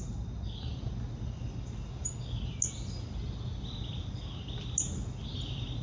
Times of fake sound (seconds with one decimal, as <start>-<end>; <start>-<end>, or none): none